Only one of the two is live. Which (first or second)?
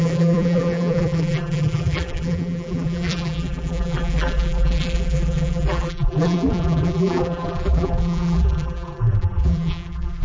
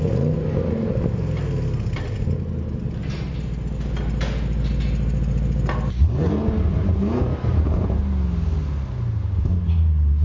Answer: second